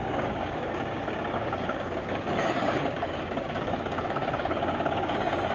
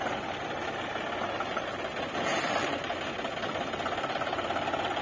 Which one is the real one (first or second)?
second